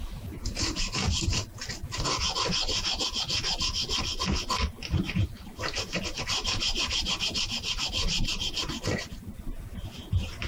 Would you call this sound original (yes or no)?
yes